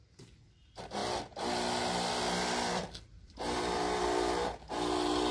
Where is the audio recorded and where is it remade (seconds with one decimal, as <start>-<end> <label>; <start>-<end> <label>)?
0.0-2.7 recorded; 2.7-3.6 remade; 3.6-5.3 recorded